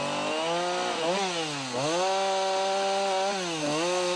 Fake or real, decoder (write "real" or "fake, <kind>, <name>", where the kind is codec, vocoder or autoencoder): real